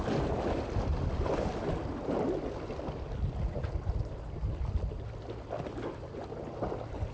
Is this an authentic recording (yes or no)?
yes